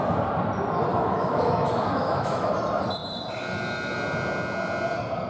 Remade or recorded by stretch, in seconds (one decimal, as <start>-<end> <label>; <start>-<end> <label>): 0.0-0.9 recorded; 0.9-2.5 remade; 2.5-5.3 recorded

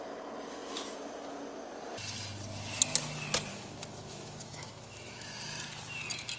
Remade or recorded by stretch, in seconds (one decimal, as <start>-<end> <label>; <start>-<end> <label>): 0.0-3.5 recorded; 3.5-5.3 remade; 5.3-6.4 recorded

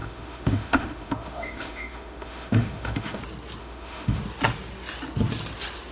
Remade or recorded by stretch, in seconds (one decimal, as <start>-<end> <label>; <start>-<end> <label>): 0.0-3.2 remade; 3.2-3.6 recorded; 3.6-4.2 remade; 4.2-5.9 recorded

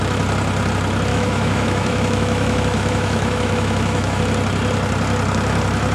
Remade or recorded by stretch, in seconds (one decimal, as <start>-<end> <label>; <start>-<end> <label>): 0.0-1.1 recorded; 1.1-4.2 remade; 4.2-5.9 recorded

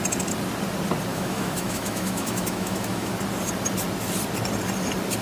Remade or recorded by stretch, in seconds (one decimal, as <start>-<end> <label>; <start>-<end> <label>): 0.0-1.1 recorded; 1.1-3.1 remade; 3.1-5.2 recorded